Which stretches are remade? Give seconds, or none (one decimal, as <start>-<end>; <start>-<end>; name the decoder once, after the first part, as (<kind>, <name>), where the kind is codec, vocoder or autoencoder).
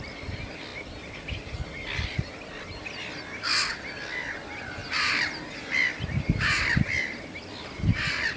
4.8-7.9 (vocoder, BigVGAN v2)